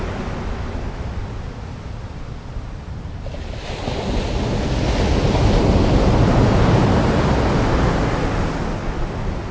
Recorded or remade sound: recorded